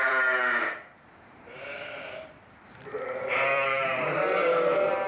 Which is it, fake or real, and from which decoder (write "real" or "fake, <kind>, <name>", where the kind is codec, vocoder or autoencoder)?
fake, vocoder, BigVGAN v2